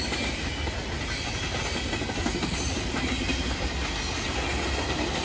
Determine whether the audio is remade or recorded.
recorded